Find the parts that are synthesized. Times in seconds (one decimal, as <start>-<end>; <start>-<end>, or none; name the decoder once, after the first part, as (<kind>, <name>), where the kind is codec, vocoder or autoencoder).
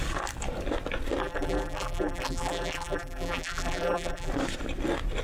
1.2-4.3 (vocoder, BigVGAN v2)